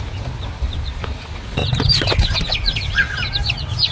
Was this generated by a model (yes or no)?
no